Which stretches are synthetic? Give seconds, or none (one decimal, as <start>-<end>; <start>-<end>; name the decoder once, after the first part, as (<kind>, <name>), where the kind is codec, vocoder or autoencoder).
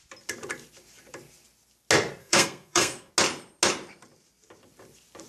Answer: 2.2-3.1 (codec, SNAC)